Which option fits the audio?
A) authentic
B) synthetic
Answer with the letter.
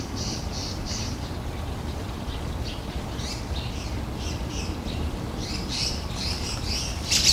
B